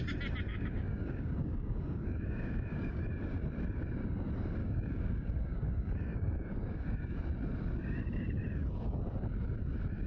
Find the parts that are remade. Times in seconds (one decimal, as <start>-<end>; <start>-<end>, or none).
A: 0.5-3.1; 4.6-7.2